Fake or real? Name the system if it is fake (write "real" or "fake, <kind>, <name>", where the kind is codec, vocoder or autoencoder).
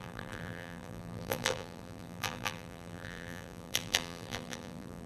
fake, vocoder, BigVGAN v2